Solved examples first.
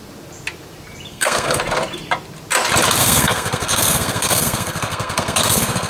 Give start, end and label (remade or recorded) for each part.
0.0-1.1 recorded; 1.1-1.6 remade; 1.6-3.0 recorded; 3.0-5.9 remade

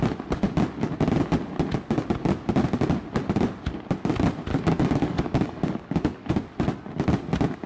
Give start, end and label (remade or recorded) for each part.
0.0-4.5 recorded; 4.5-6.3 remade; 6.3-7.7 recorded

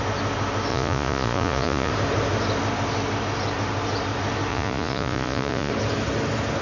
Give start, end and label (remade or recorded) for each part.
0.0-0.7 recorded; 0.7-1.9 remade; 1.9-4.5 recorded; 4.5-5.7 remade; 5.7-6.6 recorded

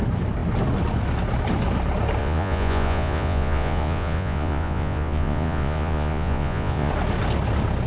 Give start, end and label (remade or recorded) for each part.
0.0-2.2 recorded; 2.2-6.9 remade; 6.9-7.9 recorded

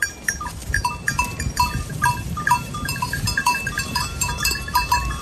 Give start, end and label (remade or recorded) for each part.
0.0-5.2 remade